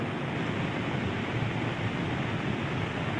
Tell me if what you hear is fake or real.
real